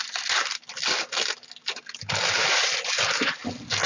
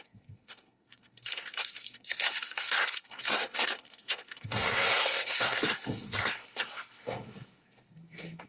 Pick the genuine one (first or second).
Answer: first